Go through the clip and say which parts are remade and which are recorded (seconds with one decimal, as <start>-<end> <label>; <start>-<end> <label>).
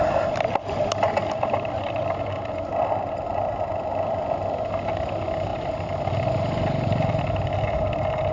0.0-8.3 recorded